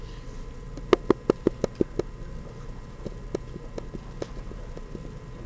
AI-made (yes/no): no